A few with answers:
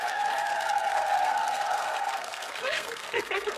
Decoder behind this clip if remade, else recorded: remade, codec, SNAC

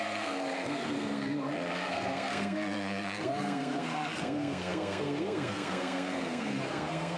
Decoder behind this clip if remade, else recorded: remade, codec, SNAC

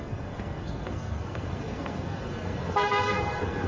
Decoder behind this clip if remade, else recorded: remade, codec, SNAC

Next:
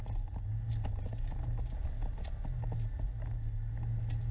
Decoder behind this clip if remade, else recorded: recorded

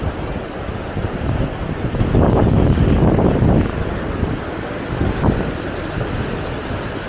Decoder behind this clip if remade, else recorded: recorded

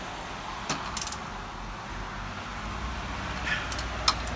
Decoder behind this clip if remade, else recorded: recorded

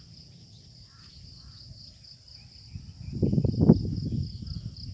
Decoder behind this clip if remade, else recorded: recorded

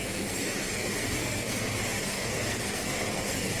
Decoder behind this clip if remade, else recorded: remade, codec, SNAC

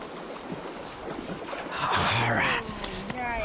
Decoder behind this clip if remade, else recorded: recorded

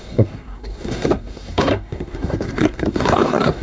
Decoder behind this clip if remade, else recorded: remade, codec, SNAC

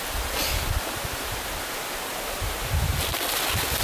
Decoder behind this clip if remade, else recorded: recorded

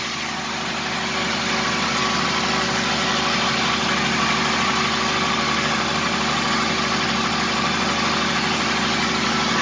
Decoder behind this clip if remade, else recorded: recorded